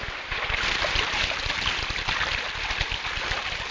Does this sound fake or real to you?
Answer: real